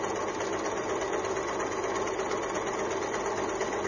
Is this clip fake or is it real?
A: real